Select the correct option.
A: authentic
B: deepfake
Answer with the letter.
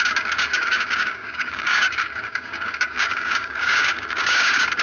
B